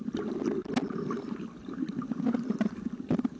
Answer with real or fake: real